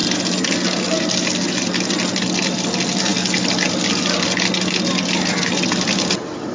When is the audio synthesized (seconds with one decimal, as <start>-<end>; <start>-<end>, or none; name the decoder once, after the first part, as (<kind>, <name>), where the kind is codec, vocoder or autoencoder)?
none

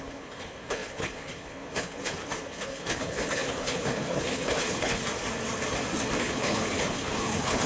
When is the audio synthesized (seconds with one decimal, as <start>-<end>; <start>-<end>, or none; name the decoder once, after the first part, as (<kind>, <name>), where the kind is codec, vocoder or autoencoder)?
0.0-5.0 (codec, HILCodec); 6.2-7.7

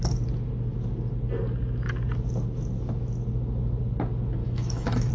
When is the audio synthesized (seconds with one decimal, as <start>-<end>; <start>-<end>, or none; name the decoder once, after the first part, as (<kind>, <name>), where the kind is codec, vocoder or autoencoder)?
4.4-5.1 (autoencoder, DAC-VAE)